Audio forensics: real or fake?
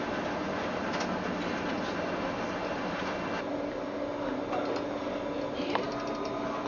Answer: real